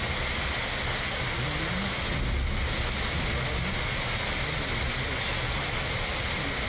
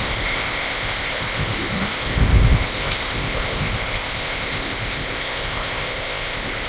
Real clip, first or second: first